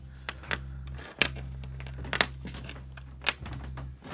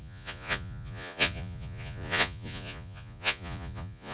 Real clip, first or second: first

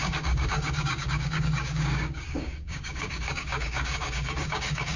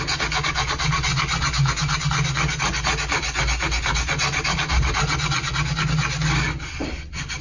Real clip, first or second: second